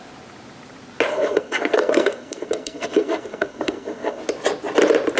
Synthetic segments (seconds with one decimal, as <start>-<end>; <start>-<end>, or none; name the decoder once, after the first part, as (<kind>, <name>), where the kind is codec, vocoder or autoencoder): 1.1-4.2 (codec, SNAC)